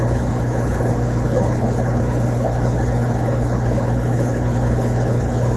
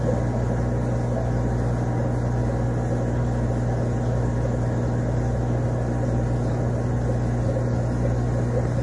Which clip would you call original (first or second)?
second